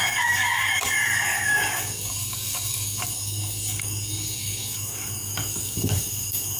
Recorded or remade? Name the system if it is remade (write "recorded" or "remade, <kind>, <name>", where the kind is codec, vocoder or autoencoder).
remade, codec, DAC